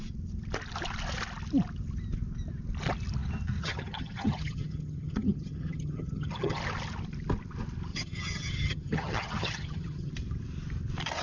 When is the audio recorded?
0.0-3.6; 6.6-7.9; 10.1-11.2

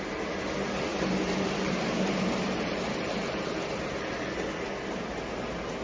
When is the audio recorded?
0.0-0.9; 3.5-5.8

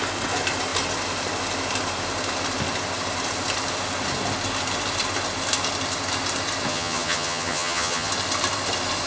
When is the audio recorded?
0.0-6.7; 8.1-9.1

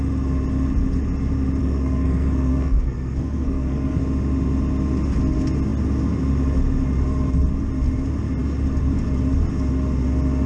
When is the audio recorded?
0.0-1.6; 4.0-10.5